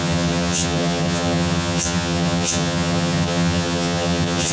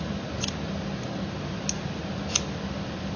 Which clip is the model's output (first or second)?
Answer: first